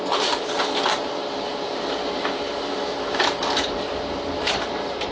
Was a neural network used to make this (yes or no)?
yes